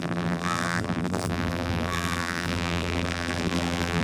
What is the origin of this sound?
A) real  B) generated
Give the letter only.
B